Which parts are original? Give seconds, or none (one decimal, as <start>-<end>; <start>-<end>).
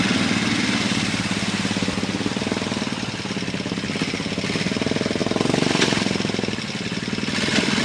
0.0-7.8